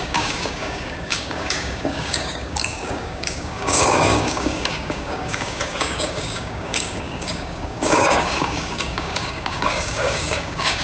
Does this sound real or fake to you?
fake